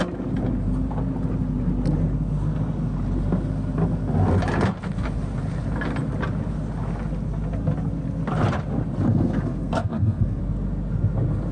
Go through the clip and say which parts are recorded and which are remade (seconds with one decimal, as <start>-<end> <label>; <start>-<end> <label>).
0.0-9.1 recorded; 9.1-10.4 remade; 10.4-11.5 recorded